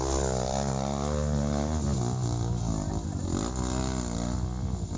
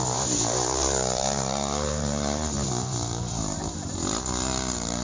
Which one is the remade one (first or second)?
second